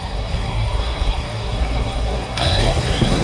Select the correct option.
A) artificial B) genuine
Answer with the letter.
A